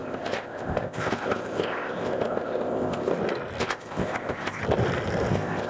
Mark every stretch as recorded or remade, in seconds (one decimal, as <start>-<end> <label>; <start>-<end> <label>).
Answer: 0.0-3.1 remade; 3.1-3.6 recorded; 3.6-4.6 remade; 4.6-5.3 recorded; 5.3-5.7 remade